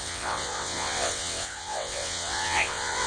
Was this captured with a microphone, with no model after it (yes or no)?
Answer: no